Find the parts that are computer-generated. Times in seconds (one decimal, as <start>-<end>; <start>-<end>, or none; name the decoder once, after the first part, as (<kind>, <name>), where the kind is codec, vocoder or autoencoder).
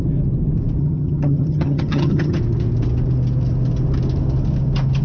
0.8-2.4 (vocoder, HiFi-GAN)